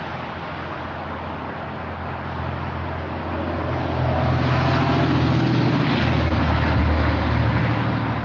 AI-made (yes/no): no